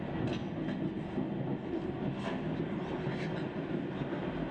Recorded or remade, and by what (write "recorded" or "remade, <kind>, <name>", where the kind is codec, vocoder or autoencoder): recorded